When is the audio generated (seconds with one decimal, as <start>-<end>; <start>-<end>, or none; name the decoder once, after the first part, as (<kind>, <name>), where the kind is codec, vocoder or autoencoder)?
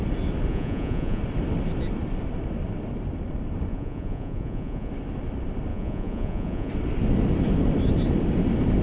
0.5-1.2 (vocoder, Vocos); 3.7-4.9; 5.7-6.7